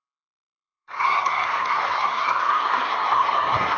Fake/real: fake